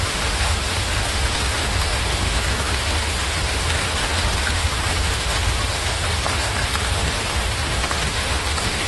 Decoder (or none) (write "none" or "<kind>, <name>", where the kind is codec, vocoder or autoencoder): autoencoder, DAC-VAE